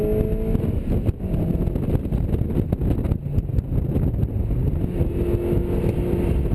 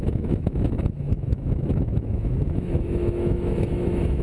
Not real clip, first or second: second